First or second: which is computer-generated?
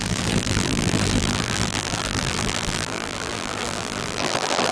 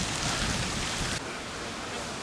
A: first